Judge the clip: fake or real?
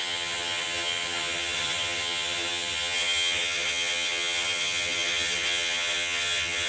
fake